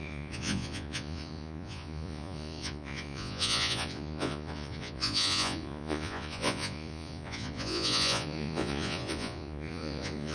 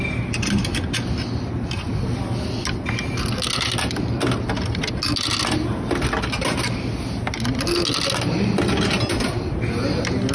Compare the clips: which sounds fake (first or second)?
first